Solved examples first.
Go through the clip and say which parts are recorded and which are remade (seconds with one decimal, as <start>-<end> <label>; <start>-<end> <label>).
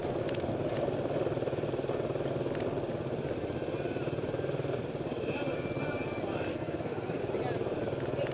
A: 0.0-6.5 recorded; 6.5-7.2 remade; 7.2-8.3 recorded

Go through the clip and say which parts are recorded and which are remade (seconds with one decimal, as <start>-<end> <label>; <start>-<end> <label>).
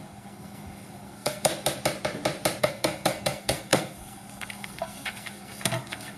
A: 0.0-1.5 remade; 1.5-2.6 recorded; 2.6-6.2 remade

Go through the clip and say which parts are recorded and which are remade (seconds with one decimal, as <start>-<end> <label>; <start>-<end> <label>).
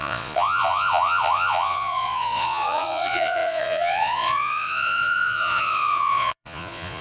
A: 0.0-7.0 remade